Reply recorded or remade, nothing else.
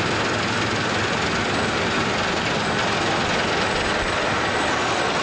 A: recorded